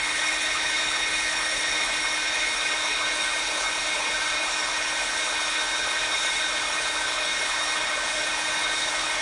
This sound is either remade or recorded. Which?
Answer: remade